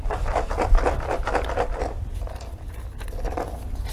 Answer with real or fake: real